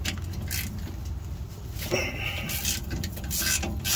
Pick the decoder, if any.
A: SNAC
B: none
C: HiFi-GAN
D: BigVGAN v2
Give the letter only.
B